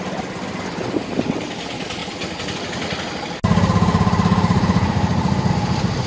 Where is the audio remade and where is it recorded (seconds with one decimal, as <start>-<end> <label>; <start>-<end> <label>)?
0.0-6.1 recorded